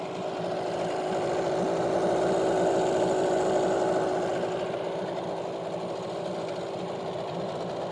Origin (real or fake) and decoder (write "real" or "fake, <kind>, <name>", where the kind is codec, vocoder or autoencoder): real